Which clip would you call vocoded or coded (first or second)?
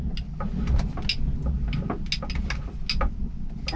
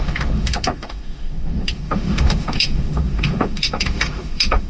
second